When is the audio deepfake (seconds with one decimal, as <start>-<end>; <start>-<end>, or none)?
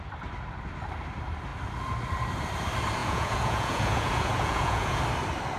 3.0-5.0